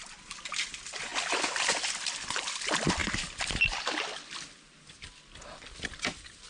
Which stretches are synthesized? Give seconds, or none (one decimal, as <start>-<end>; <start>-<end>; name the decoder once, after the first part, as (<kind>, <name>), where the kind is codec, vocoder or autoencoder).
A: none